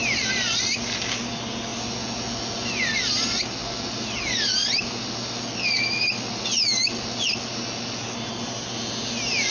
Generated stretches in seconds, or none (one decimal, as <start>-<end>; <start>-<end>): none